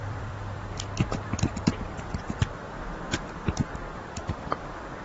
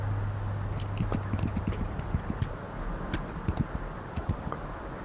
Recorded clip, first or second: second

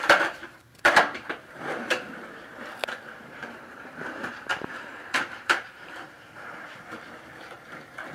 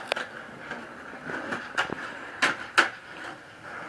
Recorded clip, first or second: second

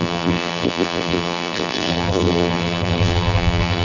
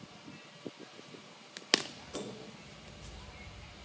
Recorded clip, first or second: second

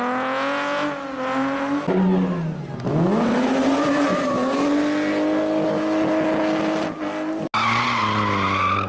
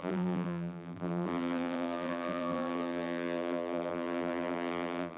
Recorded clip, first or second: first